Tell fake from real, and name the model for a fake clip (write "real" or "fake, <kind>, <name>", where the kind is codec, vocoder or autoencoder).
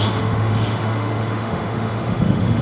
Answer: fake, autoencoder, DAC-VAE